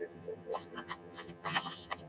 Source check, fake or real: fake